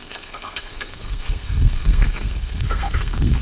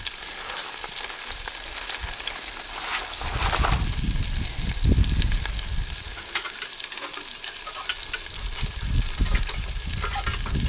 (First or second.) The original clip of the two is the second